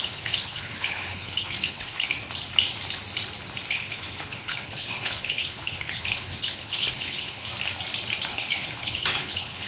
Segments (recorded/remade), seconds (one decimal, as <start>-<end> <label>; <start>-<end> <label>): 0.0-2.1 remade; 2.1-3.7 recorded; 3.7-7.5 remade; 7.5-8.3 recorded; 8.3-9.7 remade